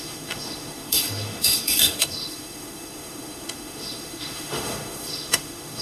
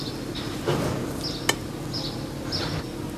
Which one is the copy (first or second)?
first